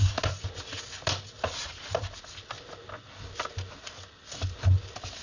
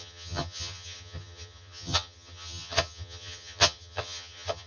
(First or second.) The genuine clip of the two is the first